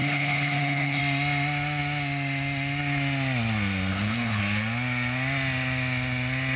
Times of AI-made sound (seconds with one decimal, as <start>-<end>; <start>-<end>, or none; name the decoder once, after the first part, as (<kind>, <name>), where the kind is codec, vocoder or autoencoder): 0.0-1.0 (codec, HILCodec); 3.9-4.4